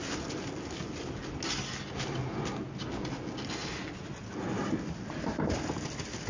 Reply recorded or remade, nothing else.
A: recorded